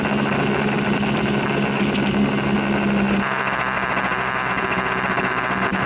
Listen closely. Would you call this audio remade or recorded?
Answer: recorded